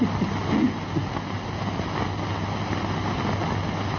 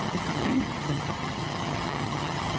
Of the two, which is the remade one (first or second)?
second